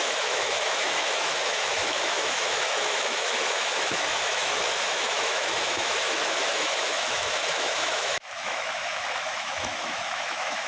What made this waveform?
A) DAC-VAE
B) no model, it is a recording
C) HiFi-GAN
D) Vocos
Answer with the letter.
A